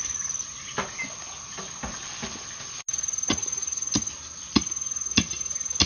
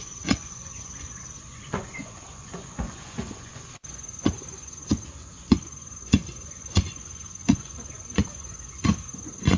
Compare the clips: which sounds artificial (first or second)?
second